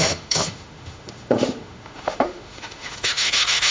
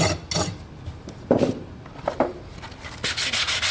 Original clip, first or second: second